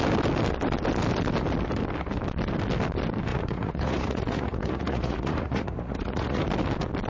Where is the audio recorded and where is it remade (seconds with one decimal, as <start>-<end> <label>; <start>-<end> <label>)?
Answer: 0.0-3.3 recorded; 3.3-6.4 remade; 6.4-7.1 recorded